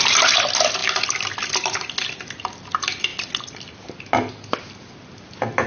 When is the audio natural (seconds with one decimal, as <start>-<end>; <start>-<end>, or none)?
0.0-5.7